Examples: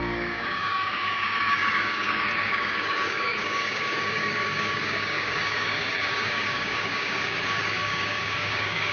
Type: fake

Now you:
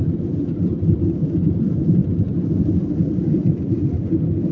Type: real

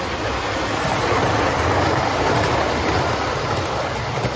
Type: real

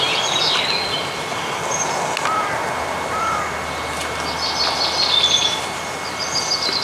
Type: real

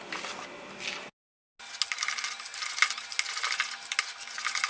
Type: real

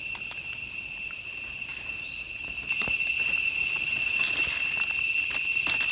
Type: real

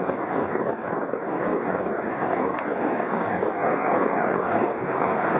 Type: fake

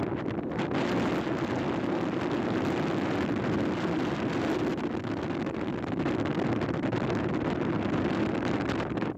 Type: real